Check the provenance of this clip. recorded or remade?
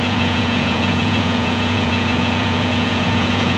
remade